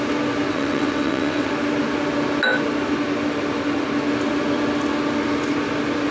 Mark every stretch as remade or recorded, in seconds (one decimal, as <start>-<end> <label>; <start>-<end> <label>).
0.0-0.5 recorded; 0.5-1.5 remade; 1.5-6.1 recorded